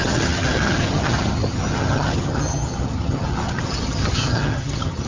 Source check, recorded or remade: remade